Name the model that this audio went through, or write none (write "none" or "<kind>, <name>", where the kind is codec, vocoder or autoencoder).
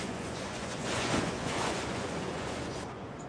vocoder, Vocos